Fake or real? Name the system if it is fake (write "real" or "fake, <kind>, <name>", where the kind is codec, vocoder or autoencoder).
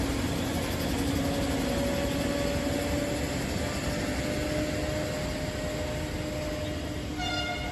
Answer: real